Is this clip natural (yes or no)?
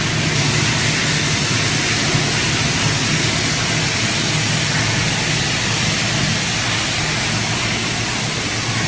yes